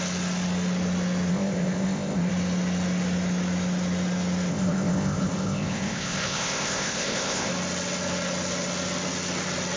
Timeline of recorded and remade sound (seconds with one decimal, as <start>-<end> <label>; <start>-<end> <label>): 0.0-1.3 recorded; 1.3-2.3 remade; 2.3-4.5 recorded; 4.5-7.5 remade; 7.5-9.8 recorded